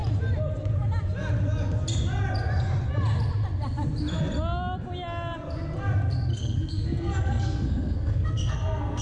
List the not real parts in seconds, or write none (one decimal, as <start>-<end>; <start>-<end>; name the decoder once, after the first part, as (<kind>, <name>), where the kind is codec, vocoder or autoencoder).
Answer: 6.3-9.0 (codec, SNAC)